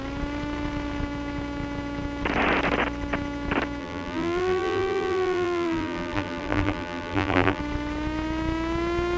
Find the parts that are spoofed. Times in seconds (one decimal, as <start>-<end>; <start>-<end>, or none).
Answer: 3.8-7.6